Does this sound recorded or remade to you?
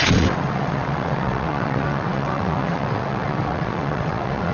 remade